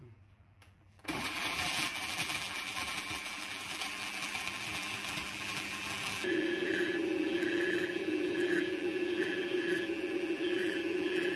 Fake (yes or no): yes